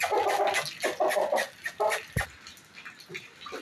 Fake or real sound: real